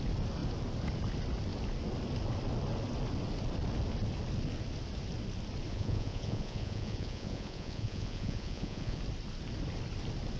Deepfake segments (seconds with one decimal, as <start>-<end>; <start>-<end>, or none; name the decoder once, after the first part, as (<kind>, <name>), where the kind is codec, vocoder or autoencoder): 5.7-9.0 (vocoder, Vocos)